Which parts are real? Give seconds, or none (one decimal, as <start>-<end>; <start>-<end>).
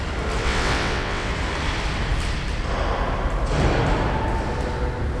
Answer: 0.0-0.4; 1.3-5.2